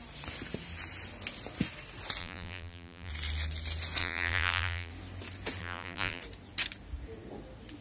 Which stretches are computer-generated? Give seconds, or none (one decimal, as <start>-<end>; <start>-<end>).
2.2-3.1; 4.0-4.9; 5.6-6.2